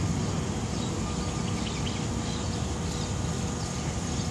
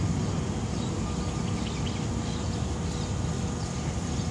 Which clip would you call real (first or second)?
first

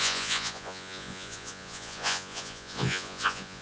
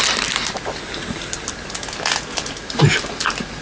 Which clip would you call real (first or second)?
second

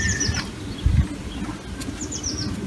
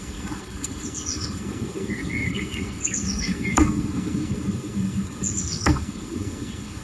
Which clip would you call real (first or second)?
first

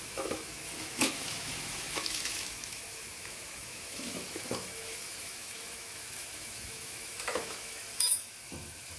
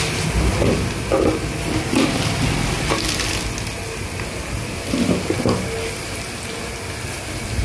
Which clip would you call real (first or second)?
second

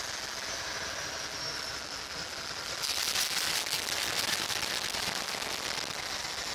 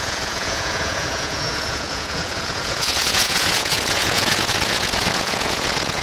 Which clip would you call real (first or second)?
first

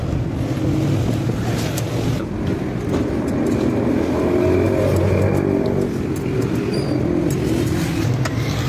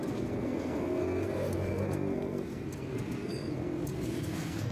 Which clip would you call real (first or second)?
first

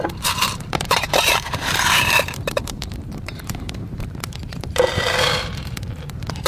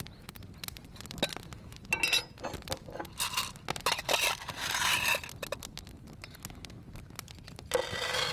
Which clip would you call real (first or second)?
second